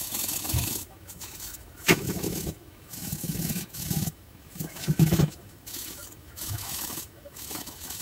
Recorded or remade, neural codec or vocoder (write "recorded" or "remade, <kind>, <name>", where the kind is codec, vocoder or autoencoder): remade, autoencoder, DAC-VAE